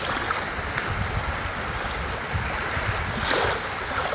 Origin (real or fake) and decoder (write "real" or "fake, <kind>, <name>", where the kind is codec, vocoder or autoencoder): real